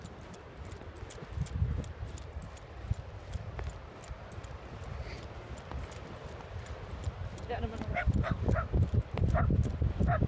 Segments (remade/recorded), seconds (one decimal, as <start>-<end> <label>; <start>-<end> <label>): 0.0-10.3 recorded